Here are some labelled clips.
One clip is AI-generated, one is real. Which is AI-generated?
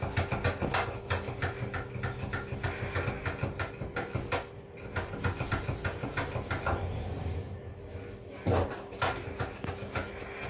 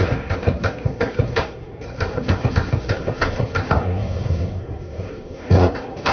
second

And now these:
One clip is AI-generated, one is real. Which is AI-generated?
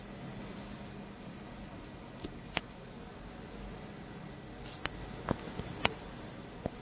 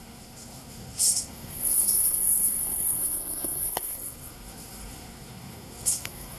second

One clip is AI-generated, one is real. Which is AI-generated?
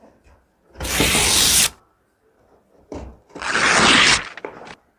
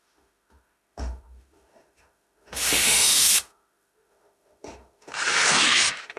second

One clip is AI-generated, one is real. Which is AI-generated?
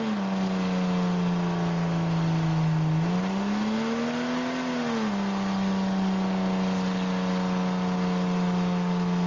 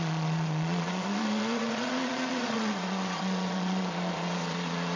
second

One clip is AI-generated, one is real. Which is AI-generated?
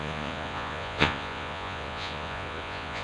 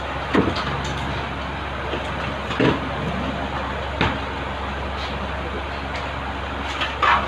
first